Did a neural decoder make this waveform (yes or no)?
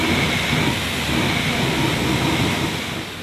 no